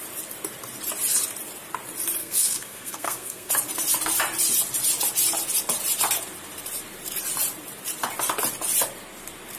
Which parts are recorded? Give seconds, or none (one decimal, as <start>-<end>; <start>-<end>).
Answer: 0.0-2.2; 3.5-9.6